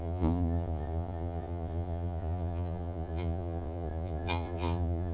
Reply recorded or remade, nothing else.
remade